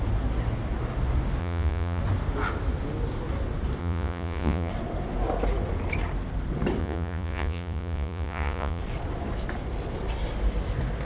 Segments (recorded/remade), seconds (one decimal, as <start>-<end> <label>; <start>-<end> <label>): 0.0-1.4 recorded; 1.4-2.0 remade; 2.0-3.8 recorded; 3.8-4.7 remade; 4.7-6.8 recorded; 6.8-8.8 remade; 8.8-11.0 recorded